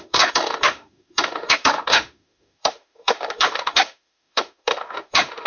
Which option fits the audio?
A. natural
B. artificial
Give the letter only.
B